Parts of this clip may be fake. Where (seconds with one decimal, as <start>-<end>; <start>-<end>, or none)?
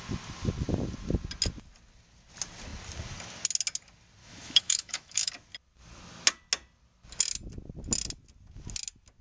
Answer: 4.2-5.3